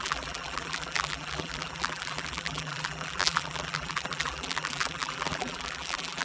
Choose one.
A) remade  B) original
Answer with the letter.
A